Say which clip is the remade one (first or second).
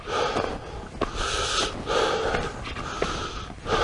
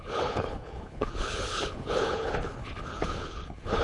second